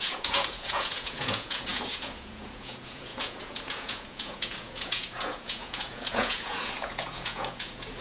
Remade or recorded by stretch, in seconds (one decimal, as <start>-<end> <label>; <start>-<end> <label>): 0.0-8.0 remade